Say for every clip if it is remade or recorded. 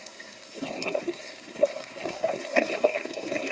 remade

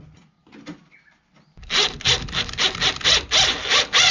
recorded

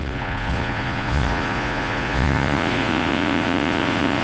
remade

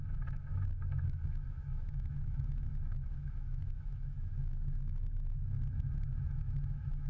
remade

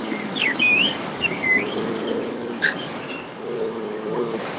remade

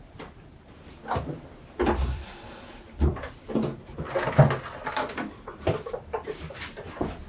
remade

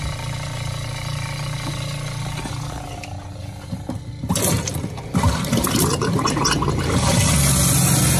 recorded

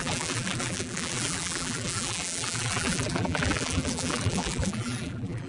remade